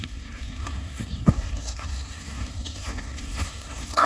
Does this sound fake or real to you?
fake